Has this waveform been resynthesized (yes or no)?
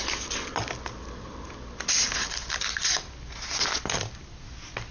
no